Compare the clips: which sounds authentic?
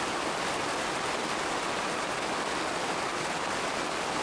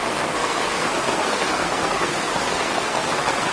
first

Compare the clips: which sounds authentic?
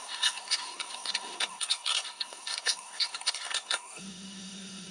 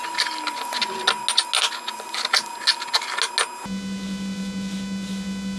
second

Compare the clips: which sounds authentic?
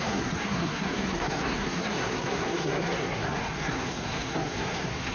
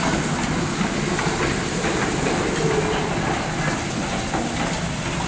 second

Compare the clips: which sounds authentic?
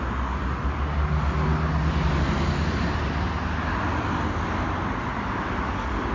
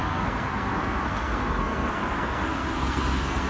first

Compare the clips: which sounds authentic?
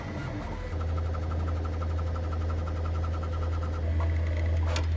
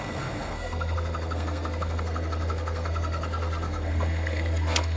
first